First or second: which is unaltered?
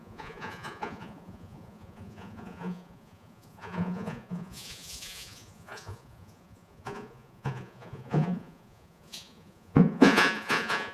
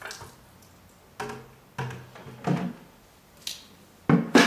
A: second